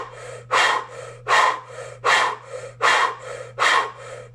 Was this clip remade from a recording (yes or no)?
no